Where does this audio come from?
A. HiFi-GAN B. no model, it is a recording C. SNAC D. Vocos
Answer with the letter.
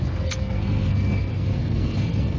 C